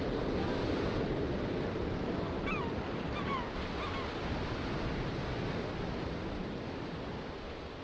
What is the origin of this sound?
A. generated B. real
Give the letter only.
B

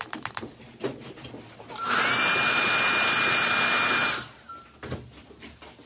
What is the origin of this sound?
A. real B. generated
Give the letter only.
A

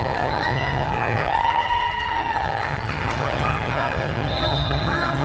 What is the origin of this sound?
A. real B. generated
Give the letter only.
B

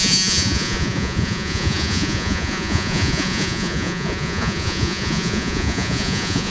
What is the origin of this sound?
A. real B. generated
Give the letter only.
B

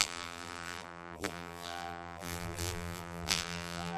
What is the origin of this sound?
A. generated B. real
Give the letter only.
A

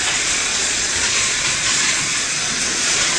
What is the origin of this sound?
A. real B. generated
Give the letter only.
B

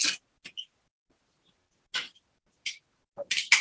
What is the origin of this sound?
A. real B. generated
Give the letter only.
A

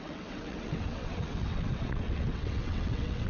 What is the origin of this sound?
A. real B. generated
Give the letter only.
B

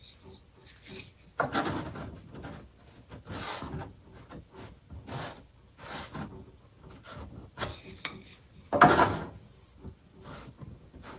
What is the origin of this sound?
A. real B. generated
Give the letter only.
A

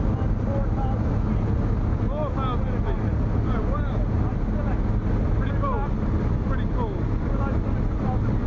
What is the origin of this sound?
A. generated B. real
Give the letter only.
B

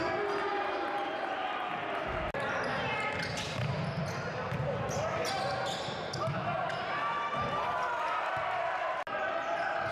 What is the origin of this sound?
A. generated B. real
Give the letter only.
B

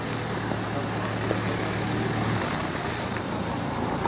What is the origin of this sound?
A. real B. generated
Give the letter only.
A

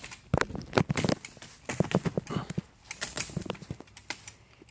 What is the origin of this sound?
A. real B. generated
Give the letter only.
A